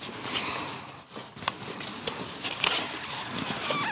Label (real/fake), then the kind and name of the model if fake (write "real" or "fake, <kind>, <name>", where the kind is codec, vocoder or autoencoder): real